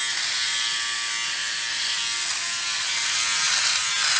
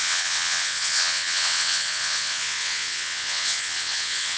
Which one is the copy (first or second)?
second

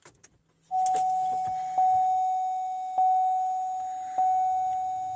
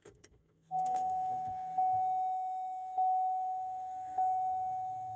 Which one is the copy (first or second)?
second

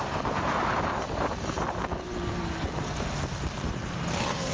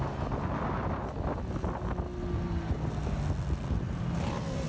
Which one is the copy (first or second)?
first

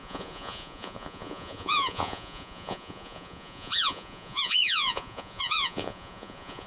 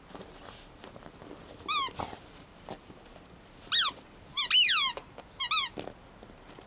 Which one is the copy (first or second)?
first